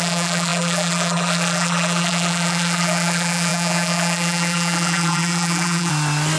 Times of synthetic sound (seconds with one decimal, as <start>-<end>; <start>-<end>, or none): 0.0-5.9